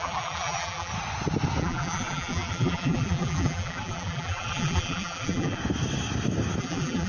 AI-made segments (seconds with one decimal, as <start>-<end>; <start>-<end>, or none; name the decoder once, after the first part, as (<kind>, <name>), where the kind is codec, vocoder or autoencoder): 0.0-0.9 (vocoder, BigVGAN v2); 1.6-5.6; 6.6-7.1